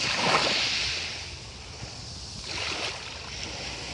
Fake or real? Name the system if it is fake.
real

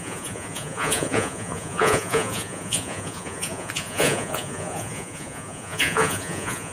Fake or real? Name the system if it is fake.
fake, vocoder, Vocos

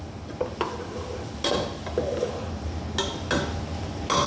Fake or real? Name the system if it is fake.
real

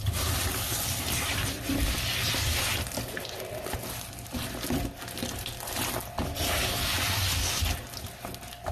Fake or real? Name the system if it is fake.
real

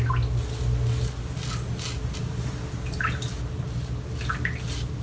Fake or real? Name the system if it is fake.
real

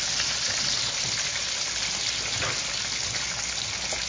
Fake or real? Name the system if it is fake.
real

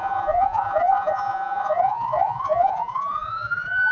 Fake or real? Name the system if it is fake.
fake, vocoder, Vocos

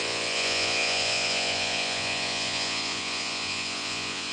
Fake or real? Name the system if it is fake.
fake, vocoder, Vocos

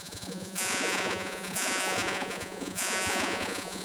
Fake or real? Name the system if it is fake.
fake, vocoder, Vocos